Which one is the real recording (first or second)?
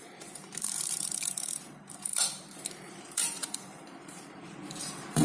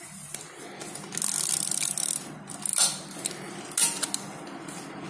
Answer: second